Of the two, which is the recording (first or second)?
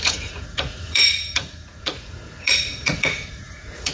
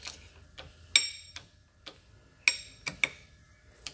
second